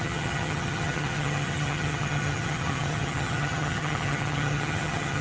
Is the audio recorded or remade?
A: remade